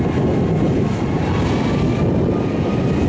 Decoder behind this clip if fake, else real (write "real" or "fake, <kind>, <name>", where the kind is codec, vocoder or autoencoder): real